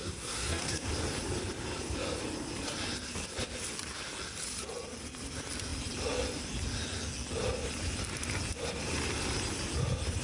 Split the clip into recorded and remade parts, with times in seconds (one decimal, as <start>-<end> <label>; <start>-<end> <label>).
0.0-0.9 remade; 0.9-10.2 recorded